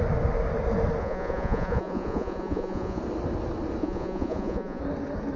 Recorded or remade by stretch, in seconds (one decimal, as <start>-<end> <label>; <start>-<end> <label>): 0.0-1.0 recorded; 1.0-3.0 remade; 3.0-3.8 recorded; 3.8-4.8 remade; 4.8-5.4 recorded

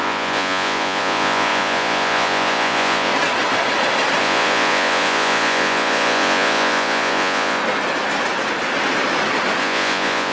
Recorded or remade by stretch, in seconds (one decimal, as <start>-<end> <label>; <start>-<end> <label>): 0.0-3.1 remade; 3.1-4.2 recorded; 4.2-7.6 remade; 7.6-9.6 recorded; 9.6-10.3 remade